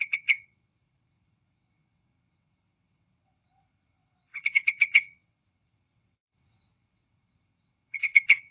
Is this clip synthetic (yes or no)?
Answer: yes